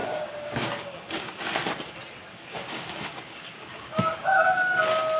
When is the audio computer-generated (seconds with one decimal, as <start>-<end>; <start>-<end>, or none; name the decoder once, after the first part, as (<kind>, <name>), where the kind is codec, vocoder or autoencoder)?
0.0-1.4 (codec, DAC); 2.2-4.8